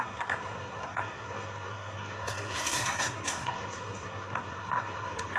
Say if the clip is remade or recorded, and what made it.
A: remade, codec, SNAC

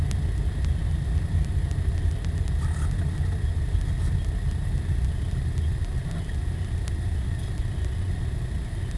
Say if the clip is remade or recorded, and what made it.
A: recorded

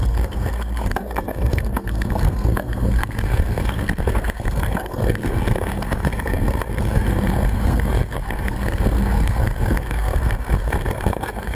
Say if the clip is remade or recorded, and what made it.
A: remade, codec, SNAC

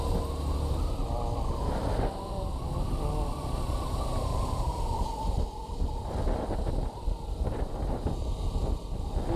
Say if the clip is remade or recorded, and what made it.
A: recorded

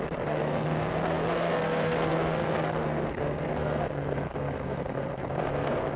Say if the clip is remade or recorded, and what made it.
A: remade, codec, SNAC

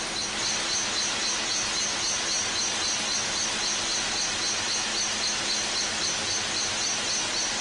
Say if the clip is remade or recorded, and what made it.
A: recorded